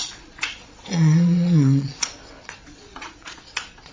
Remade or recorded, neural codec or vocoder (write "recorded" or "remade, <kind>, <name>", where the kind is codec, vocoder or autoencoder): remade, vocoder, Vocos